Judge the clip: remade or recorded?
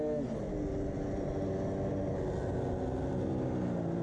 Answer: recorded